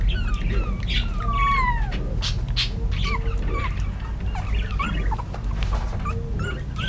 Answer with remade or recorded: recorded